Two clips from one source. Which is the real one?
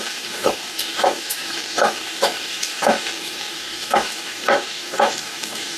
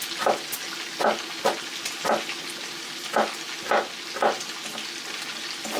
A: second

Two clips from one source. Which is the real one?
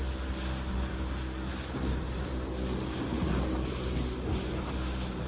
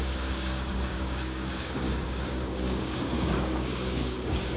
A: first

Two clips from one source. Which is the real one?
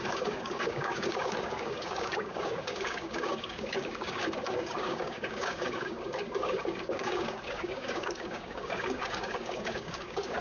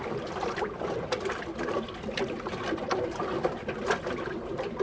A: second